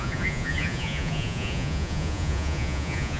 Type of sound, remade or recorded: remade